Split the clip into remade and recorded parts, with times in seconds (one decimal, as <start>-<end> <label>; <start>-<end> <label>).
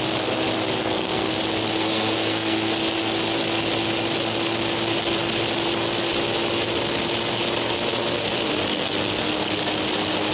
0.0-0.8 recorded; 0.8-1.3 remade; 1.3-1.8 recorded; 1.8-2.7 remade; 2.7-8.7 recorded; 8.7-9.6 remade; 9.6-10.3 recorded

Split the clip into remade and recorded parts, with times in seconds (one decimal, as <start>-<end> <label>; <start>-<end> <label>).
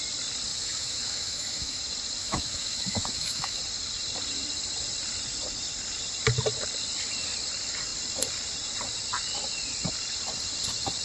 0.0-0.5 recorded; 0.5-1.8 remade; 1.8-2.2 recorded; 2.2-3.6 remade; 3.6-11.0 recorded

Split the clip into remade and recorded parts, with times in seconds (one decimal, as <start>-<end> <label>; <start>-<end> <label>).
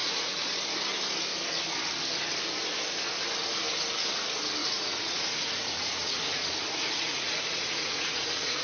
0.0-0.5 remade; 0.5-4.6 recorded; 4.6-8.6 remade